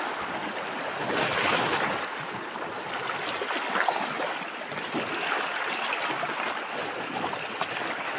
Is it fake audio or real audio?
real